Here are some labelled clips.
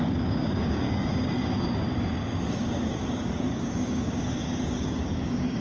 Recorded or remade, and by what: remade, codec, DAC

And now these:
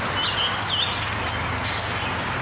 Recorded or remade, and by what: recorded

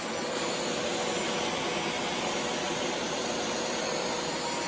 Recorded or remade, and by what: recorded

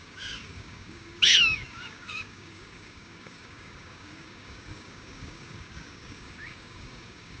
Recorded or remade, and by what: remade, codec, DAC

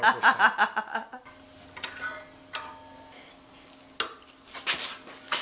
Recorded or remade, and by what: recorded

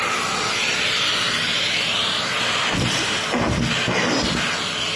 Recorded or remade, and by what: recorded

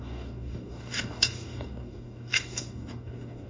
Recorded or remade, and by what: remade, codec, DAC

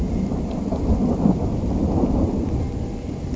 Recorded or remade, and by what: recorded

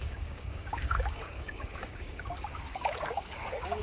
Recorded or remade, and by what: remade, codec, DAC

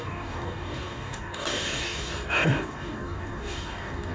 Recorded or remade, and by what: remade, codec, DAC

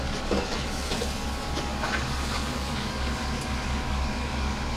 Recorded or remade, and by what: remade, codec, DAC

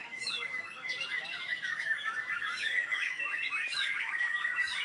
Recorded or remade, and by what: remade, codec, DAC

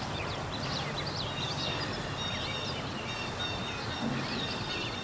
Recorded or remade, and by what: recorded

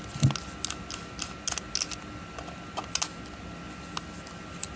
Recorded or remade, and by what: recorded